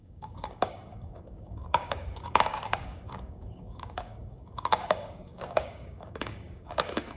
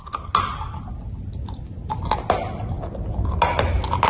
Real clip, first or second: second